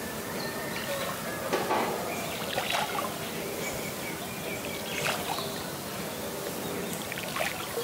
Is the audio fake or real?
real